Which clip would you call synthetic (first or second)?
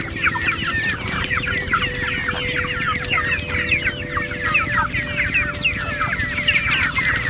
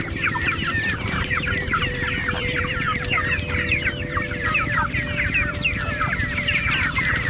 second